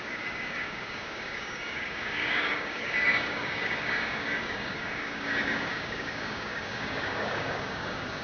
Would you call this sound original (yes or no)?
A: no